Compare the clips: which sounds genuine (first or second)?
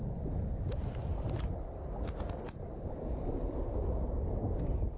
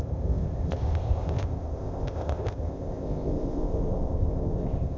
first